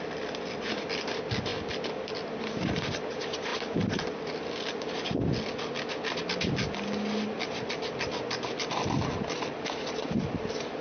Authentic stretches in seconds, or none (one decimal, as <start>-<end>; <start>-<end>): 0.0-10.8